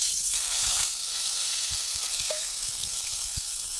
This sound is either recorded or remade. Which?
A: remade